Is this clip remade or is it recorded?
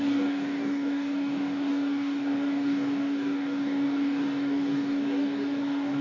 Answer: remade